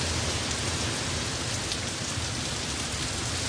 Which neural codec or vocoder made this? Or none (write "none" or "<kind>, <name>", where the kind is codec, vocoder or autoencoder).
none